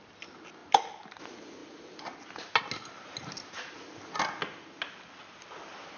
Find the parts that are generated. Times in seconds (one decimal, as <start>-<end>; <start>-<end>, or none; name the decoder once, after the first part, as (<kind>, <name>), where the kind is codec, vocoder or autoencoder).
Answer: none